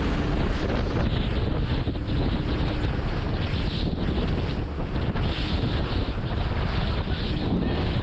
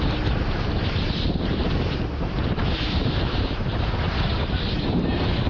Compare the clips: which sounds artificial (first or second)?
second